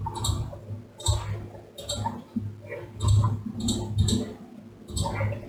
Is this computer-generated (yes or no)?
no